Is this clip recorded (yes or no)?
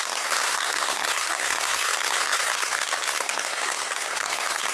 no